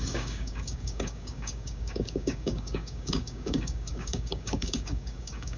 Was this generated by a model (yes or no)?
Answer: yes